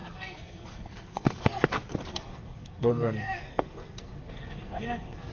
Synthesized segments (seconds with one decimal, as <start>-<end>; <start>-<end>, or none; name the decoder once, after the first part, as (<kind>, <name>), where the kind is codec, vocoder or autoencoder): 0.0-1.7 (codec, SNAC); 2.1-5.3